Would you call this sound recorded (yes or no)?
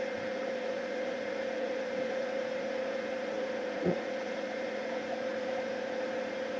no